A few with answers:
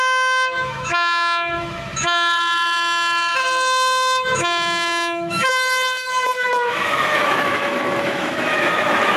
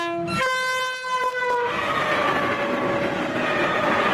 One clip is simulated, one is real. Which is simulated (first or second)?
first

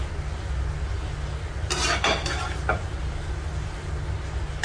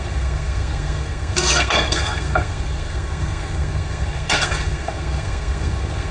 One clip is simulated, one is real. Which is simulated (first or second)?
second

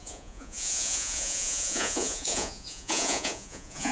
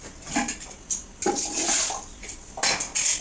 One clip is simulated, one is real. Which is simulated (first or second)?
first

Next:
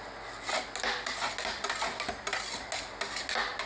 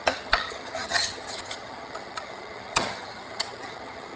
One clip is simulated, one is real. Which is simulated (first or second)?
second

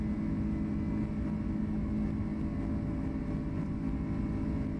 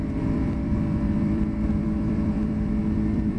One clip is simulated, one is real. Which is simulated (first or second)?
second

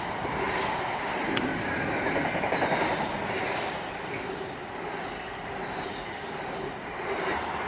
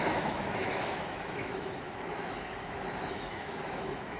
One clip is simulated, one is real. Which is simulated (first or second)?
second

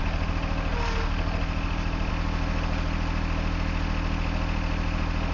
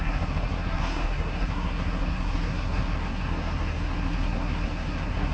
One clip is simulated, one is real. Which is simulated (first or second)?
second